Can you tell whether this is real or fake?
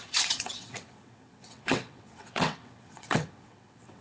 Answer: fake